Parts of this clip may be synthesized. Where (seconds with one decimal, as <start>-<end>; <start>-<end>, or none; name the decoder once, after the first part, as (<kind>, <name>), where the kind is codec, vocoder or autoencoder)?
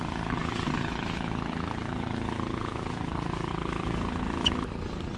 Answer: none